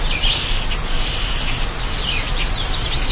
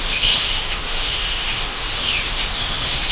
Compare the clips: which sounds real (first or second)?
first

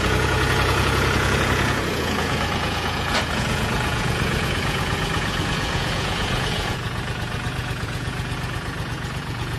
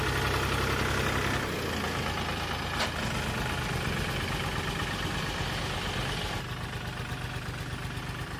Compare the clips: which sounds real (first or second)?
second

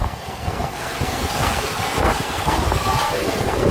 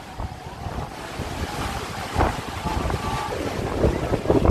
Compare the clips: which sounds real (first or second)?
second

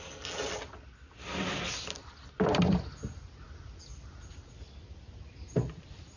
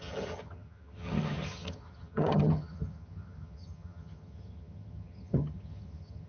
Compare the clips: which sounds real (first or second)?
first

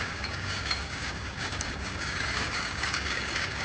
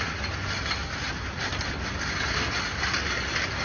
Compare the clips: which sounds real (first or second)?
second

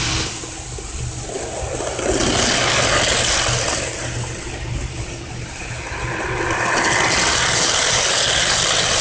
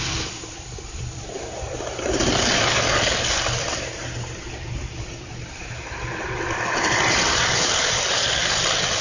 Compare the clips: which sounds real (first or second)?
first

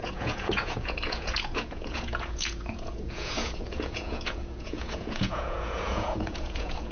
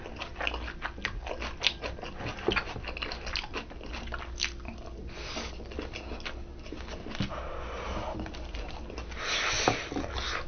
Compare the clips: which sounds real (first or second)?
second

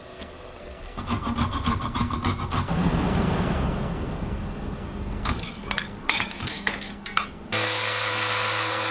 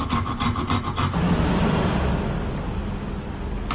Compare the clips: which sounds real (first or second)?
second